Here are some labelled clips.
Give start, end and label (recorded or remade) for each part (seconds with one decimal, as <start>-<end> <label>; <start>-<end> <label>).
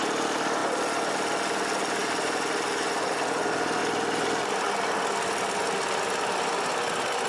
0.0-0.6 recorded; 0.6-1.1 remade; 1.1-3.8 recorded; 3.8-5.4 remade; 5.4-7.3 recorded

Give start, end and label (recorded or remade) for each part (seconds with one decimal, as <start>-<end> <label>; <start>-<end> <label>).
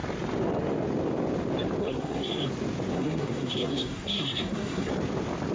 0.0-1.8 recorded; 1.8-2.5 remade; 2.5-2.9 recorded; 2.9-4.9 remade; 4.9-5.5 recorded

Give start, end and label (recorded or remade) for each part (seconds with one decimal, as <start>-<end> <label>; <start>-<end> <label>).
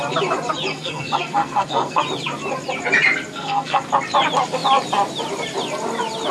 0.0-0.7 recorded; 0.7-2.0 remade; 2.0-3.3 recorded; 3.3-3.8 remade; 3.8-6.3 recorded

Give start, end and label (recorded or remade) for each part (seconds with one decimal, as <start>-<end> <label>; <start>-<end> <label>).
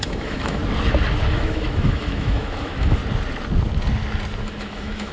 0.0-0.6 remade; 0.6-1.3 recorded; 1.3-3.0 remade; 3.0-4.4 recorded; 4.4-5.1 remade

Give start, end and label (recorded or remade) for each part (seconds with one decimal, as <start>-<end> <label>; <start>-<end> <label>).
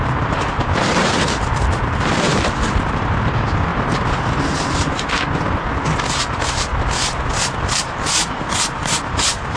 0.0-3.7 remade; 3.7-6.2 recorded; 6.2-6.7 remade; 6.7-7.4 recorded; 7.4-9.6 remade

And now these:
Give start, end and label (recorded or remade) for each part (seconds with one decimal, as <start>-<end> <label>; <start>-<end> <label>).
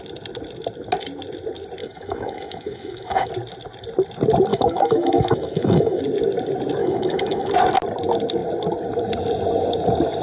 0.0-1.8 recorded; 1.8-3.3 remade; 3.3-4.5 recorded; 4.5-6.0 remade; 6.0-6.8 recorded; 6.8-7.5 remade; 7.5-10.2 recorded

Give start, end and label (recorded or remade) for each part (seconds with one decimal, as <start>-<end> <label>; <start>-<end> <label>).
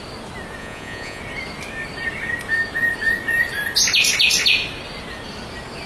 0.0-0.6 recorded; 0.6-1.2 remade; 1.2-5.9 recorded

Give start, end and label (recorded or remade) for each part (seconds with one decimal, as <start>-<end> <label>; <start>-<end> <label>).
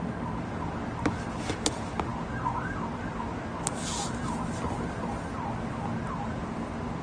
0.0-7.0 recorded